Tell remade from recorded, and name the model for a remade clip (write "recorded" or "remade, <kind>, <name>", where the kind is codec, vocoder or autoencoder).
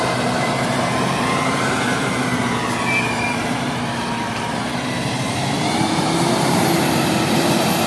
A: remade, vocoder, BigVGAN v2